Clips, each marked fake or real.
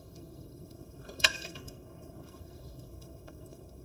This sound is fake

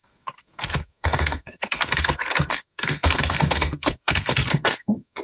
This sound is fake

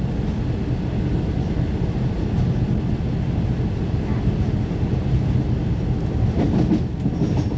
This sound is real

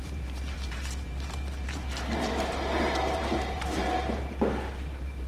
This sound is fake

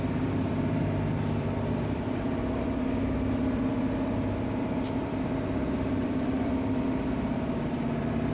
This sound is fake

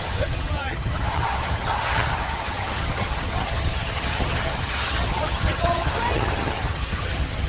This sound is fake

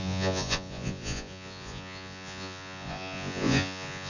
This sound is fake